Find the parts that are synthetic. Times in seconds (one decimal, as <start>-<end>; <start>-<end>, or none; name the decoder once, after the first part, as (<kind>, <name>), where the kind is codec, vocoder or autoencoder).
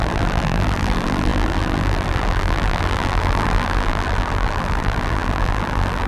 0.0-6.1 (vocoder, BigVGAN v2)